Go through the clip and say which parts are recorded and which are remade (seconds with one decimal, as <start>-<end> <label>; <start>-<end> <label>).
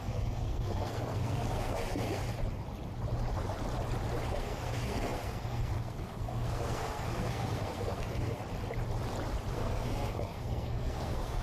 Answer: 0.0-2.2 remade; 2.2-4.3 recorded; 4.3-8.4 remade; 8.4-9.5 recorded; 9.5-11.4 remade